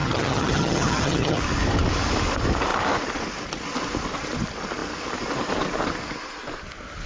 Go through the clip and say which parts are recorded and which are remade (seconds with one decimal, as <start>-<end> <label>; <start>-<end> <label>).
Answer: 0.0-1.4 remade; 1.4-7.1 recorded